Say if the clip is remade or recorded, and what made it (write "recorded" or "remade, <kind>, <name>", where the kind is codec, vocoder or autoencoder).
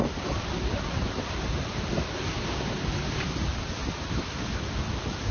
recorded